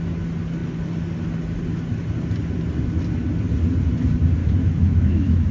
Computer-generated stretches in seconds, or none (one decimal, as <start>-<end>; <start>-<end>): 4.4-5.5